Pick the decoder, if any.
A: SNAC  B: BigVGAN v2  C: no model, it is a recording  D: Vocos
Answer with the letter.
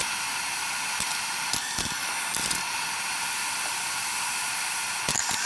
C